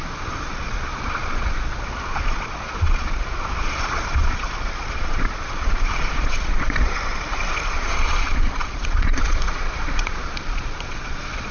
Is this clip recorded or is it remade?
remade